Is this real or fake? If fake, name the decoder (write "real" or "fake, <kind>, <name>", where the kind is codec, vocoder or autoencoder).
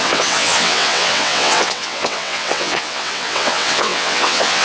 fake, vocoder, WaveNeXt